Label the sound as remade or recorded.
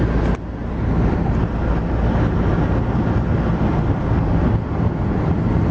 recorded